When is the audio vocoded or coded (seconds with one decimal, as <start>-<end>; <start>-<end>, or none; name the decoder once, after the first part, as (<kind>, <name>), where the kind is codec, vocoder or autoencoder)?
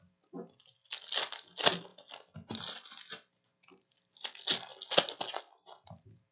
1.9-3.3 (vocoder, BigVGAN v2)